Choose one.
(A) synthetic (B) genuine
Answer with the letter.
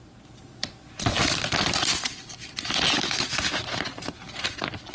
B